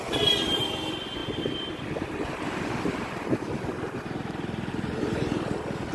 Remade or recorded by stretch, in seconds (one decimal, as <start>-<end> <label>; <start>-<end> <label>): 0.0-1.2 recorded; 1.2-4.7 remade; 4.7-5.9 recorded

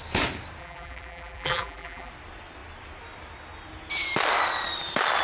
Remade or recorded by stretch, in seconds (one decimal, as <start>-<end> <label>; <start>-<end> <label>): 0.0-0.6 recorded; 0.6-2.1 remade; 2.1-5.2 recorded

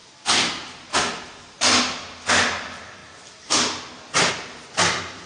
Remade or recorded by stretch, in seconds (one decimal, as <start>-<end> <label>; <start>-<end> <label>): 0.0-2.3 recorded; 2.3-3.0 remade; 3.0-4.3 recorded; 4.3-5.3 remade

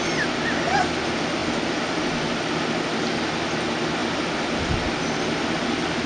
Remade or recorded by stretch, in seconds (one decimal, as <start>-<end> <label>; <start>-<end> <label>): 0.0-1.4 recorded; 1.4-2.2 remade; 2.2-4.0 recorded; 4.0-6.1 remade

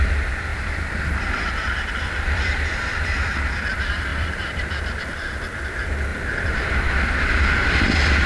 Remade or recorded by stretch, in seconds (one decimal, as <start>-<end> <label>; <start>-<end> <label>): 0.0-0.5 recorded; 0.5-3.3 remade; 3.3-4.1 recorded; 4.1-5.4 remade; 5.4-6.1 recorded; 6.1-6.7 remade; 6.7-8.3 recorded

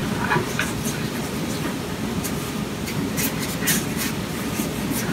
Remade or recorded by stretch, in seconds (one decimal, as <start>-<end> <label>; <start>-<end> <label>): 0.0-5.1 recorded

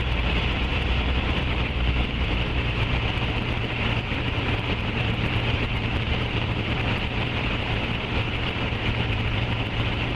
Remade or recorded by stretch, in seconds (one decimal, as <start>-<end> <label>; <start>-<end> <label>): 0.0-10.2 remade